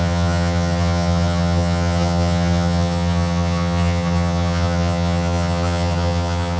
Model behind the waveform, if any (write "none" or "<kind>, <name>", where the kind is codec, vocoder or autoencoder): vocoder, HiFi-GAN